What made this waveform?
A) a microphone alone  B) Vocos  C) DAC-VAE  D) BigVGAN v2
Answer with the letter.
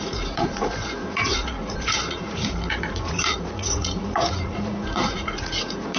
B